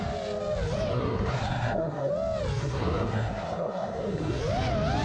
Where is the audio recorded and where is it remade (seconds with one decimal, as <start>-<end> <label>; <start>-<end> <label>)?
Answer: 0.0-0.9 recorded; 0.9-2.1 remade; 2.1-2.6 recorded; 2.6-4.4 remade; 4.4-5.0 recorded